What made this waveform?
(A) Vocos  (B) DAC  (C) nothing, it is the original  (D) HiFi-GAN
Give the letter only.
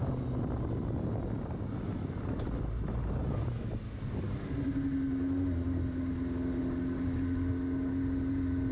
C